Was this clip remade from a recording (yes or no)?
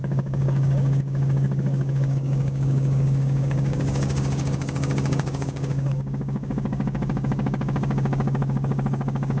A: yes